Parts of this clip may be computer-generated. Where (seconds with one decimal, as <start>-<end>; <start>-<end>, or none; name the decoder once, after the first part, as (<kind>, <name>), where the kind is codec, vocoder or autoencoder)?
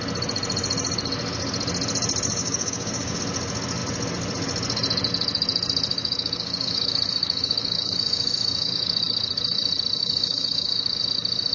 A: 2.4-3.2 (codec, DAC); 5.9-9.0; 10.0-11.0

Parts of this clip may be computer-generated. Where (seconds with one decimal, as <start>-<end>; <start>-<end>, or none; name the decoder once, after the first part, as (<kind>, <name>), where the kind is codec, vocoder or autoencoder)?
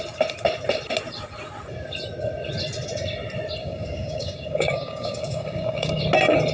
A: 3.6-6.0 (codec, DAC)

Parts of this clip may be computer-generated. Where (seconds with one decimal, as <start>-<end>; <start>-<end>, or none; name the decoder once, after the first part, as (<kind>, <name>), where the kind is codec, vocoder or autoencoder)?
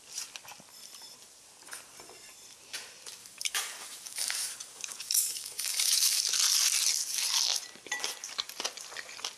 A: 3.2-6.3 (codec, DAC)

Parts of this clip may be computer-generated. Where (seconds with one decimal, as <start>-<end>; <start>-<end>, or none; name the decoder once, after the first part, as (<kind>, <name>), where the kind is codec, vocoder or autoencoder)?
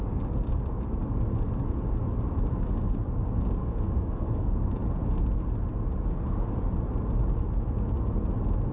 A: 0.0-1.0 (codec, DAC); 2.5-4.8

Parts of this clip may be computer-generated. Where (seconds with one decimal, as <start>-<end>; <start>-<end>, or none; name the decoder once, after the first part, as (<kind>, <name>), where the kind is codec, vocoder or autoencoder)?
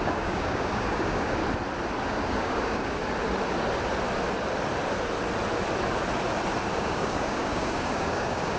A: 0.0-1.4 (codec, DAC); 2.0-3.0; 6.7-8.6